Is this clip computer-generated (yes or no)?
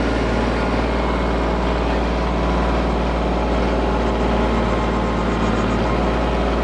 no